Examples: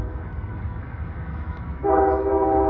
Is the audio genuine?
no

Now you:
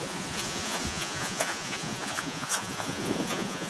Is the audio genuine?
no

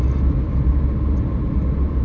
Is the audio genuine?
yes